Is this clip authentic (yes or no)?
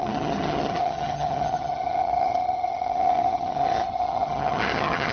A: no